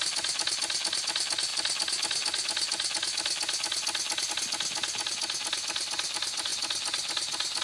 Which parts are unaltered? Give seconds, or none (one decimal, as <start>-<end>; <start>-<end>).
0.0-7.6